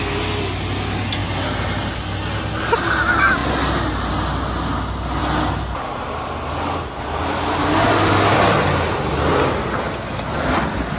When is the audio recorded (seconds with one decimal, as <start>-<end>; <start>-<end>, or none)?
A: 0.0-11.0

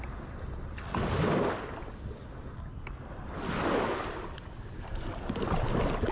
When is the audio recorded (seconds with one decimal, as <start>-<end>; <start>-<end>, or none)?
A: 0.0-6.1

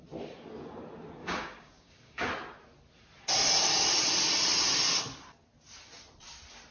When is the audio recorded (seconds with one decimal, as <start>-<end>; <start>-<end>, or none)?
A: 0.0-1.2; 2.3-6.7

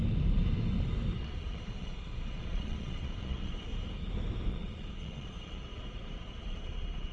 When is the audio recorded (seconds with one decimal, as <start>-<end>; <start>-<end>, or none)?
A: 0.0-1.2; 3.7-4.5

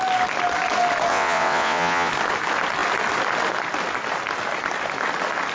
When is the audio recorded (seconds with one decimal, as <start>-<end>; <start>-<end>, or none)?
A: 0.0-1.1; 2.1-5.5

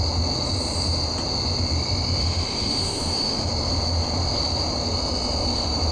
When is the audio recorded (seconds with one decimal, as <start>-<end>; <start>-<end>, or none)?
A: 0.0-2.2; 3.5-5.9

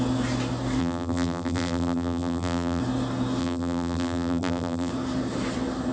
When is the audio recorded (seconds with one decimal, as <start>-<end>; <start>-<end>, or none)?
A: 0.0-0.8; 2.8-3.4; 4.9-5.9